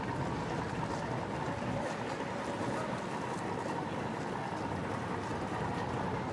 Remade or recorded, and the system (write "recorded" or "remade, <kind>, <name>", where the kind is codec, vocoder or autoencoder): recorded